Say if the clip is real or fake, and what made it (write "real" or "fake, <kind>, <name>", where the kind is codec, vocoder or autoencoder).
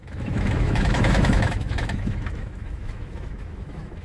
fake, autoencoder, DAC-VAE